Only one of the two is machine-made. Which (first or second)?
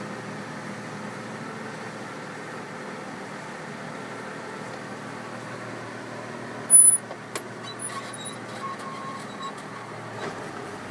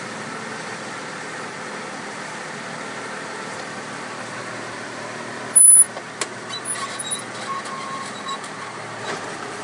second